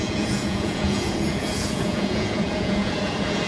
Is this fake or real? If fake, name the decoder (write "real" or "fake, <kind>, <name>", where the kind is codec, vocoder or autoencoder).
fake, vocoder, Vocos